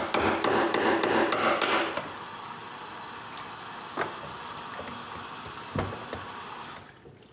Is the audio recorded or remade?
recorded